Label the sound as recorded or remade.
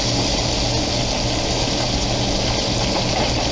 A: recorded